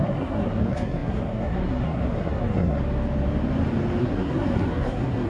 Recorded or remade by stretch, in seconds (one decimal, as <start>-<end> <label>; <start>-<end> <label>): 0.0-2.8 remade; 2.8-4.0 recorded; 4.0-5.3 remade